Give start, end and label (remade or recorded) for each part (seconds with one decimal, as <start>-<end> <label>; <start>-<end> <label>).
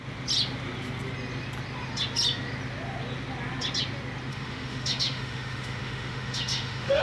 0.0-4.3 recorded; 4.3-7.0 remade